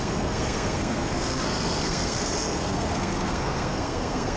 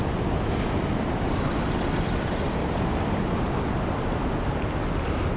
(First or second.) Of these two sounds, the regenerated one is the first